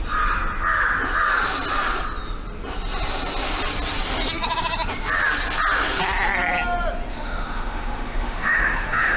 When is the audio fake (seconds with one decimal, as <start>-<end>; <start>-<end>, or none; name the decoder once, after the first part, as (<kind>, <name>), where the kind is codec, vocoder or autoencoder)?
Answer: 7.1-9.2 (autoencoder, DAC-VAE)